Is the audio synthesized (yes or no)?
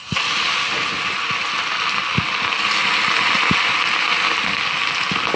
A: no